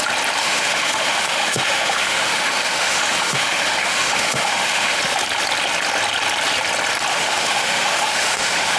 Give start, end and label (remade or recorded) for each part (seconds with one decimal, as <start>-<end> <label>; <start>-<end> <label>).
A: 0.0-0.4 recorded; 0.4-5.0 remade; 5.0-7.1 recorded; 7.1-8.8 remade